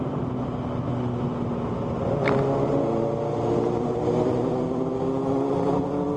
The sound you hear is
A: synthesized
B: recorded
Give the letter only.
B